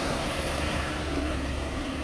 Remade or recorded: remade